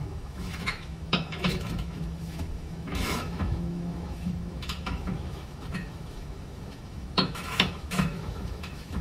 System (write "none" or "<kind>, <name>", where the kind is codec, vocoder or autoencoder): autoencoder, DAC-VAE